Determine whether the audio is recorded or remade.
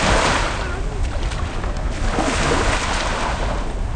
recorded